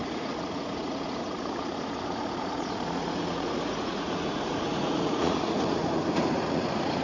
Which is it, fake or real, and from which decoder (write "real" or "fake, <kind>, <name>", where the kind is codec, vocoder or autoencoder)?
fake, vocoder, Vocos